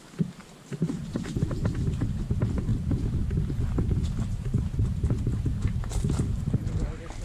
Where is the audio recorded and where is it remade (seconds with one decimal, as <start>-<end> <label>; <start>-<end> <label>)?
0.0-0.4 recorded; 0.4-1.0 remade; 1.0-7.2 recorded